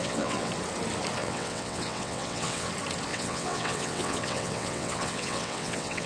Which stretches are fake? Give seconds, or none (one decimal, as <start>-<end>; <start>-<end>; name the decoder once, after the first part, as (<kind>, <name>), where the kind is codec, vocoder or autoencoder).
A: 0.0-0.5 (vocoder, WaveNeXt); 1.2-2.7; 3.1-6.1